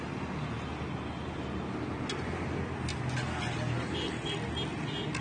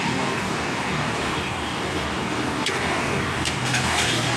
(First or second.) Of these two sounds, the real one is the first